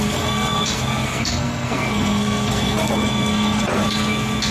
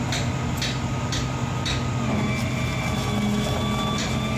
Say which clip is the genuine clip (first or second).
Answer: second